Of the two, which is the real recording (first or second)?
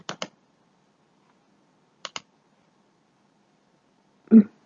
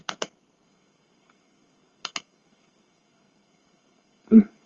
first